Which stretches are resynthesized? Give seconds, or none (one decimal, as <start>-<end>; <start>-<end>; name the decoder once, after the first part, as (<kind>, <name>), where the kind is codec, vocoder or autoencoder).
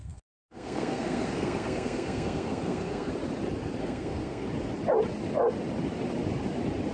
0.0-3.1 (codec, SNAC); 3.8-4.5